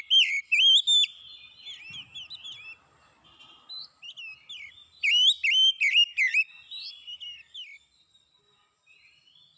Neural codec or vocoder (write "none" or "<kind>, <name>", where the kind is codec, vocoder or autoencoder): none